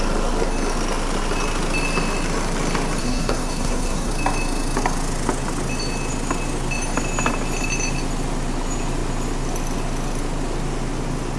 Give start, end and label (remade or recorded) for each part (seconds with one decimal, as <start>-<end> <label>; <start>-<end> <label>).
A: 0.0-3.0 recorded; 3.0-4.1 remade; 4.1-11.4 recorded